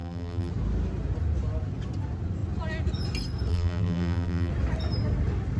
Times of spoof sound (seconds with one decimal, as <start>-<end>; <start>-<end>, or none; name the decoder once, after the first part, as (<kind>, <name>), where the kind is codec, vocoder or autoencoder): 0.0-0.5 (vocoder, BigVGAN v2); 3.5-4.5